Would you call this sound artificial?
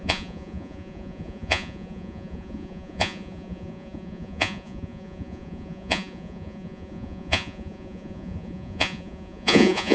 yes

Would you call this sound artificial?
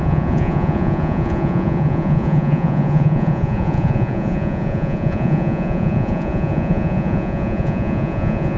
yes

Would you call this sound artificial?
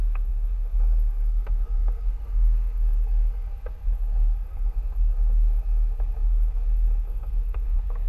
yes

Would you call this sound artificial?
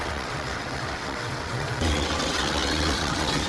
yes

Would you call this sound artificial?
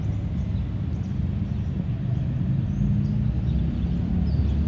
no